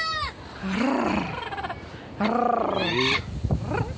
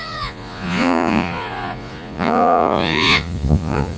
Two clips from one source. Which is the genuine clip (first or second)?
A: first